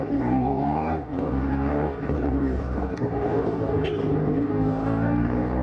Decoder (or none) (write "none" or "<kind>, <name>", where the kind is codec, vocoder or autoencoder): codec, DAC